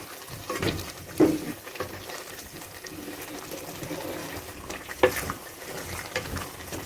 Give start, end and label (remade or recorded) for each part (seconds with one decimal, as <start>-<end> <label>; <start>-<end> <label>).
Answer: 0.0-1.4 recorded; 1.4-2.3 remade; 2.3-6.9 recorded